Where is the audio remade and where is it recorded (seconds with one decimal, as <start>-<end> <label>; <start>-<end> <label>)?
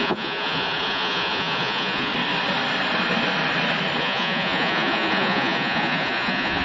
0.0-2.1 remade; 2.1-4.0 recorded; 4.0-6.6 remade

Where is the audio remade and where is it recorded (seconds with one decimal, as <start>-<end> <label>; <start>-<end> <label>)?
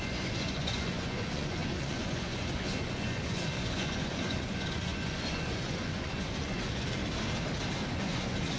0.0-7.0 remade; 7.0-7.9 recorded; 7.9-8.6 remade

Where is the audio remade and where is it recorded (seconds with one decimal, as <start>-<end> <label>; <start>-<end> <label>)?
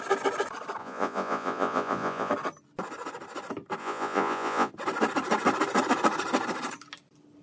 0.0-0.8 recorded; 0.8-2.3 remade; 2.3-3.8 recorded; 3.8-4.7 remade; 4.7-7.4 recorded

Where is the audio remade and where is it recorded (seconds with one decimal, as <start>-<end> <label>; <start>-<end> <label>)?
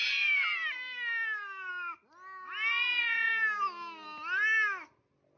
0.0-2.7 recorded; 2.7-3.3 remade; 3.3-5.4 recorded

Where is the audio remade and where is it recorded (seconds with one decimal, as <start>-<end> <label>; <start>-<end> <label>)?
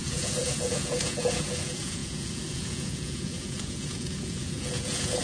0.0-5.2 remade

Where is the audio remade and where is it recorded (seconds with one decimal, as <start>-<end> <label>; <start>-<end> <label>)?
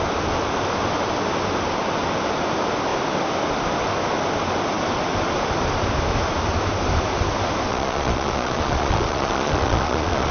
0.0-7.7 recorded; 7.7-10.3 remade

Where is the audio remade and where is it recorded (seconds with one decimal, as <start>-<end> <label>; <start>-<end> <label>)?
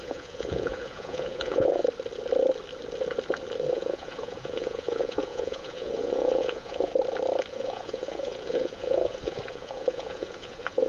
0.0-1.8 remade; 1.8-3.7 recorded; 3.7-6.9 remade; 6.9-7.5 recorded; 7.5-10.9 remade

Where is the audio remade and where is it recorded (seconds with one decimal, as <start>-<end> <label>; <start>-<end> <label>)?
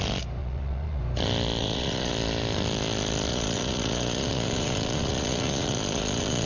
0.0-0.4 recorded; 0.4-1.0 remade; 1.0-1.6 recorded; 1.6-2.1 remade; 2.1-3.3 recorded; 3.3-6.5 remade